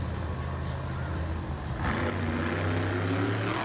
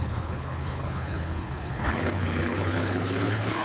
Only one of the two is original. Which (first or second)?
first